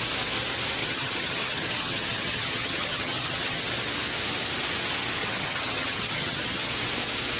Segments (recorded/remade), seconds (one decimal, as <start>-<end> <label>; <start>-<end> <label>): 0.0-0.8 recorded; 0.8-3.6 remade; 3.6-5.2 recorded; 5.2-6.7 remade; 6.7-7.4 recorded

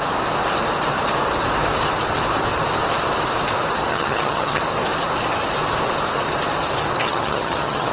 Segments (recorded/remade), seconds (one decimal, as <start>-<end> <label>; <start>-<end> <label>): 0.0-3.9 recorded; 3.9-4.6 remade; 4.6-7.0 recorded; 7.0-7.9 remade

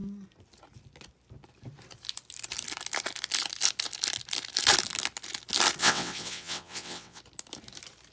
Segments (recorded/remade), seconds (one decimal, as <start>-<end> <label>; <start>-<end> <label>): 0.0-5.8 recorded; 5.8-7.2 remade; 7.2-8.1 recorded

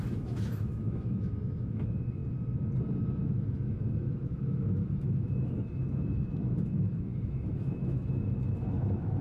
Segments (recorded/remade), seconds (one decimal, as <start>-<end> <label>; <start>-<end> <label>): 0.0-2.2 remade; 2.2-3.1 recorded; 3.1-9.2 remade

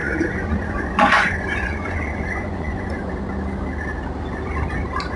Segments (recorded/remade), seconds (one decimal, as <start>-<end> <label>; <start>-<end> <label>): 0.0-3.1 remade; 3.1-5.2 recorded